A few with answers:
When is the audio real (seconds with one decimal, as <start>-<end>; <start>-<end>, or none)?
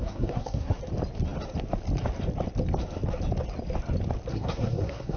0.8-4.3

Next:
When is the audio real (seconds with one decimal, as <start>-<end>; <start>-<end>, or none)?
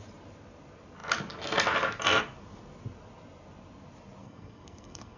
0.0-4.2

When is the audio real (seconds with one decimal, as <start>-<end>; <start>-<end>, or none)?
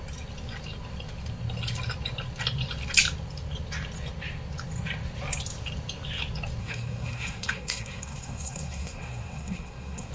0.0-6.6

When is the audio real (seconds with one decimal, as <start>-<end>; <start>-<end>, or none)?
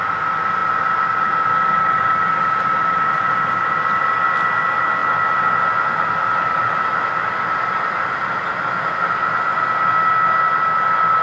0.0-11.2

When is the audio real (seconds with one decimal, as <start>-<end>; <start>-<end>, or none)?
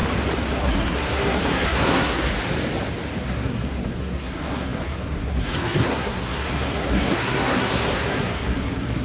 0.0-0.5; 2.3-3.2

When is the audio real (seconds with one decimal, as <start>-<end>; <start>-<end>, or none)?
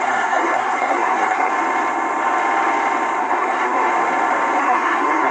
1.5-3.2; 3.9-4.6